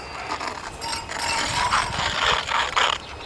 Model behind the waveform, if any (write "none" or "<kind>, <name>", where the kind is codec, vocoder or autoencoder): none